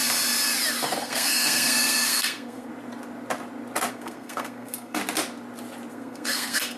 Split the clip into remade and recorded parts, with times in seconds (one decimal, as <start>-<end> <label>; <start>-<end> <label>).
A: 0.0-1.0 recorded; 1.0-2.7 remade; 2.7-3.9 recorded; 3.9-5.0 remade; 5.0-5.9 recorded; 5.9-6.8 remade